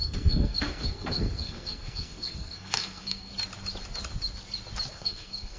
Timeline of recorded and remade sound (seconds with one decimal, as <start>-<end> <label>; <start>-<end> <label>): 0.0-3.3 remade; 3.3-4.9 recorded; 4.9-5.6 remade